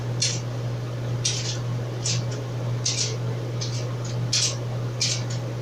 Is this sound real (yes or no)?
yes